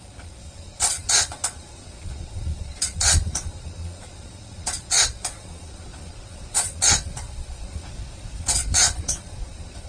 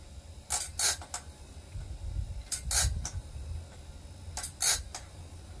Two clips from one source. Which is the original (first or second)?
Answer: second